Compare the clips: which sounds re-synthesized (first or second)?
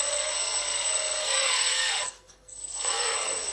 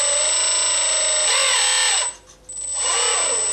first